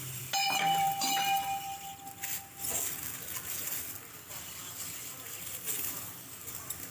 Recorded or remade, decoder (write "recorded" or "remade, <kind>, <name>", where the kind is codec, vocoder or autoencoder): recorded